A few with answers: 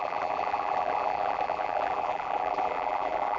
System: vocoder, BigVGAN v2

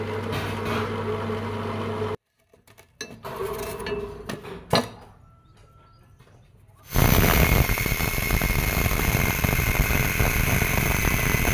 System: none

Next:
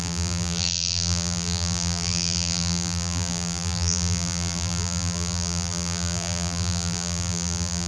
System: vocoder, BigVGAN v2